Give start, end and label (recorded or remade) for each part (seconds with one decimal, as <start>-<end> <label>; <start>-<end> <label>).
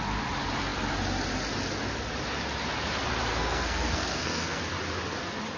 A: 0.0-3.3 recorded; 3.3-4.6 remade; 4.6-5.6 recorded